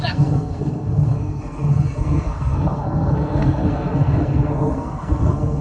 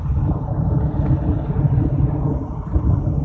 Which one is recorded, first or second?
second